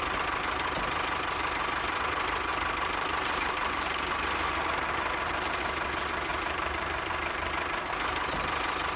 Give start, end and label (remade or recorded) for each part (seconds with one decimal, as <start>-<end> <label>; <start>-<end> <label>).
0.0-2.5 recorded; 2.5-5.6 remade; 5.6-6.3 recorded; 6.3-7.5 remade; 7.5-9.0 recorded